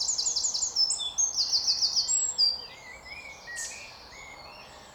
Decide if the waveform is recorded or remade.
recorded